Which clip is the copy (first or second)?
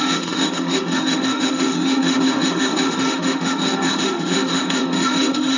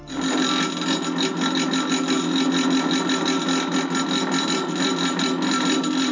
first